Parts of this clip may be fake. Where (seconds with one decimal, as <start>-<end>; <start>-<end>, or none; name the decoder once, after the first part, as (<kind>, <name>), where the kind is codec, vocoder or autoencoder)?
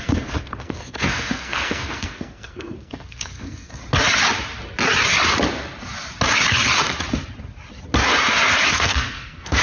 0.0-3.8 (codec, SNAC); 8.7-9.6